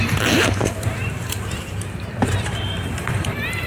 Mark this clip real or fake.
fake